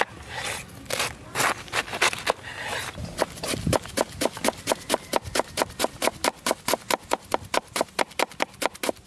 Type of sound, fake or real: real